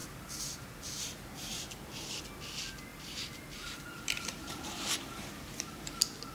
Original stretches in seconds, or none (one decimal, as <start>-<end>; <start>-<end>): 2.2-2.9; 5.3-6.3